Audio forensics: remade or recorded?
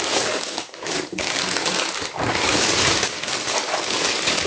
remade